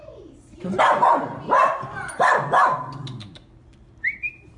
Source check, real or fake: fake